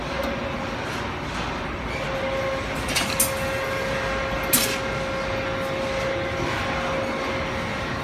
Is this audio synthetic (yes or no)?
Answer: no